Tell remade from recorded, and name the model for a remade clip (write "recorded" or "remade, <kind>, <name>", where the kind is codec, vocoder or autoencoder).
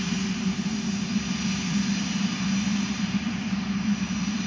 remade, vocoder, BigVGAN v2